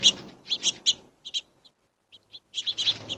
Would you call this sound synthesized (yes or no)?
no